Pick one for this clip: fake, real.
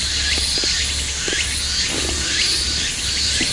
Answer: real